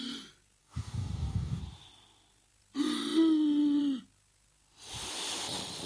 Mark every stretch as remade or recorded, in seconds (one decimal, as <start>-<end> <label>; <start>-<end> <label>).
0.0-0.6 recorded; 0.6-1.6 remade; 1.6-5.9 recorded